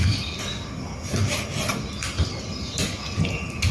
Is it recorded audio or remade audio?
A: recorded